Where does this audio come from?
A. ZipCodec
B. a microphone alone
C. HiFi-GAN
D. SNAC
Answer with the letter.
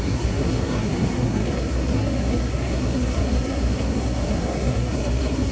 D